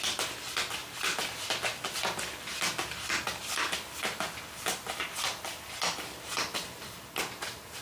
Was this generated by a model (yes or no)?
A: no